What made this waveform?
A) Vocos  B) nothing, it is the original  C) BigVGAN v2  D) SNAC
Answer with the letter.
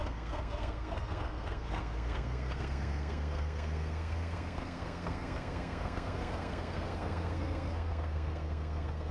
D